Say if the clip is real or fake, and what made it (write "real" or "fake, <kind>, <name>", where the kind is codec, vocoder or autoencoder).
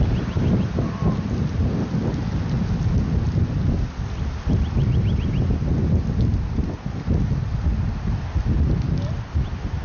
real